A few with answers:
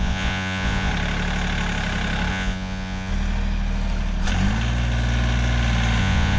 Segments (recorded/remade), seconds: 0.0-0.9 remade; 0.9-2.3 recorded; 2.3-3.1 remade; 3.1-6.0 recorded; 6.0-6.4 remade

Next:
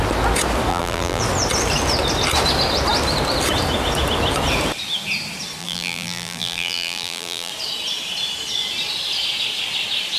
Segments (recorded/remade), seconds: 0.0-0.7 recorded; 0.7-1.2 remade; 1.2-5.6 recorded; 5.6-7.5 remade; 7.5-10.2 recorded

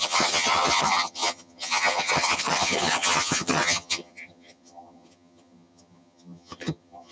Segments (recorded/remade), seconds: 0.0-7.1 remade

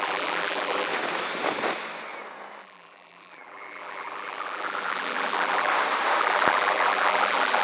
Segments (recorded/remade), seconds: 0.0-0.9 remade; 0.9-2.6 recorded; 2.6-5.7 remade; 5.7-6.2 recorded; 6.2-7.6 remade